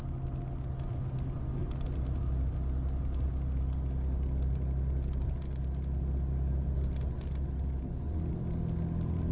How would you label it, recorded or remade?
recorded